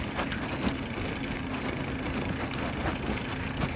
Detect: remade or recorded recorded